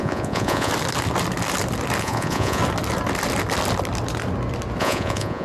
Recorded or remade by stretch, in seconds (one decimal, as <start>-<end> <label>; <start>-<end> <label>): 0.0-0.7 remade; 0.7-2.0 recorded; 2.0-2.6 remade; 2.6-4.8 recorded; 4.8-5.4 remade